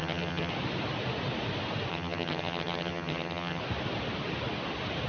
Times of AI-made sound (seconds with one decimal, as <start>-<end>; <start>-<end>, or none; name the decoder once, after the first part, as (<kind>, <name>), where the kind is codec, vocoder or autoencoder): 0.0-0.5 (vocoder, HiFi-GAN); 1.9-3.6